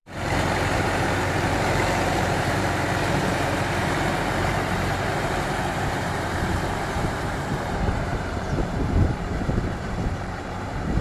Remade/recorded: remade